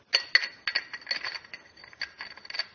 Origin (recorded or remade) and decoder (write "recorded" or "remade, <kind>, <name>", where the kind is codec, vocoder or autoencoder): recorded